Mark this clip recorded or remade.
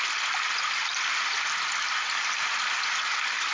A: recorded